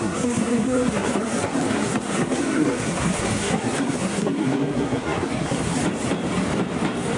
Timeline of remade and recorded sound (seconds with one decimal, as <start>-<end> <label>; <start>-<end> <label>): 0.0-5.8 remade; 5.8-7.2 recorded